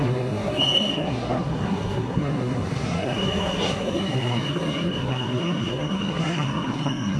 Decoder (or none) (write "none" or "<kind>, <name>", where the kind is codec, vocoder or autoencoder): codec, SNAC